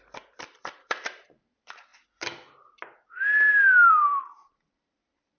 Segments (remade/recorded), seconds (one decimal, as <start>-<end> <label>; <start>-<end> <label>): 0.0-1.9 remade; 1.9-3.9 recorded; 3.9-5.4 remade